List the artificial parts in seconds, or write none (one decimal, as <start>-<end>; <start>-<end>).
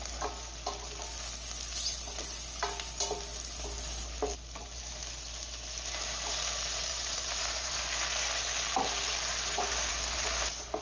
6.9-7.8; 9.9-10.8